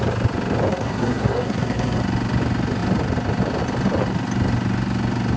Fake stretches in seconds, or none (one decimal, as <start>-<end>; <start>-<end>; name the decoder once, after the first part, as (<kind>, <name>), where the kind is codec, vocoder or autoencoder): 0.7-2.0 (codec, SNAC)